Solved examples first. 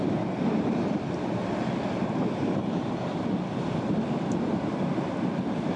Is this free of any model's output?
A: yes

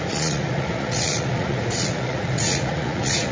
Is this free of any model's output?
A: no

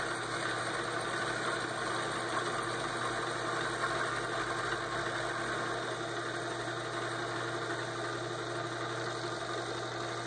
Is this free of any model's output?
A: yes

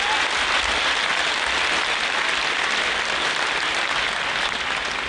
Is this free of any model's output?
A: yes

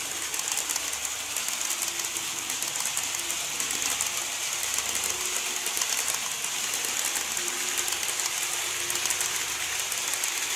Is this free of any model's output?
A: yes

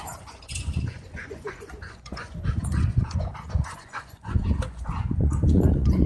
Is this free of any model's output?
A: no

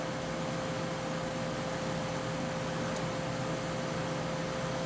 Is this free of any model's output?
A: yes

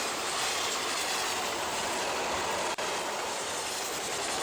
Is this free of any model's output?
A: yes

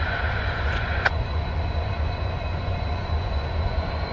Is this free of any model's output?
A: no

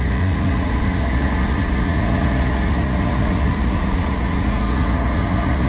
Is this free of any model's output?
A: no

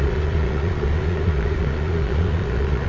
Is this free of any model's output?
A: no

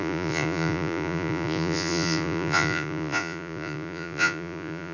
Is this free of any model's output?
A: no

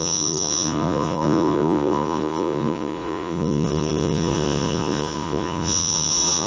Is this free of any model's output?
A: no